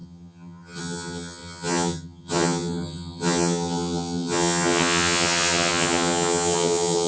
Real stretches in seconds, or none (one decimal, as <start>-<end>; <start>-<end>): none